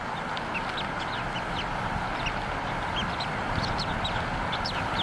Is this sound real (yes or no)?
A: yes